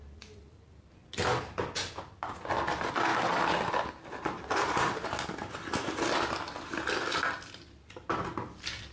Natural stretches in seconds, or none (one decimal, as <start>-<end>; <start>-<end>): 0.0-8.9